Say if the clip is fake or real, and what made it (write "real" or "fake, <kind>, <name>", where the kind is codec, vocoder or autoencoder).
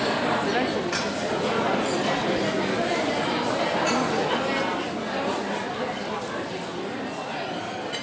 real